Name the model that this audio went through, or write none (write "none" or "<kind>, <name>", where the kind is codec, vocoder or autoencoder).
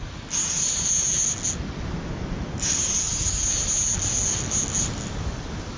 none